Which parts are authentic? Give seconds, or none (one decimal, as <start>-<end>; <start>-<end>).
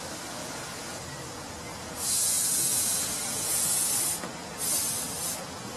0.0-0.4; 3.9-5.8